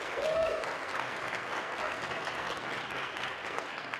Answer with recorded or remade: remade